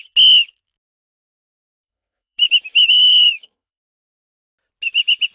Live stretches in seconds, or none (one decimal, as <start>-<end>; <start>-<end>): 0.0-1.5; 4.5-5.3